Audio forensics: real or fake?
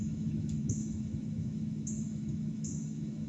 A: fake